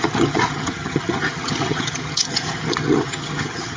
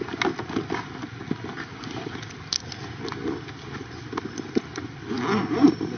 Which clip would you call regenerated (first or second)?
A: first